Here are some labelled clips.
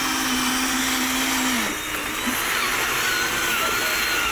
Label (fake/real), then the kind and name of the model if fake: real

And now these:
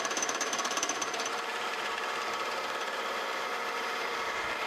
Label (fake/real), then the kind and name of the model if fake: fake, vocoder, BigVGAN v2